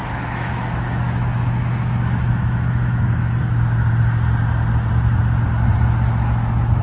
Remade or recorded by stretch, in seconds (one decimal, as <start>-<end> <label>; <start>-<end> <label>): 0.0-3.4 remade; 3.4-6.8 recorded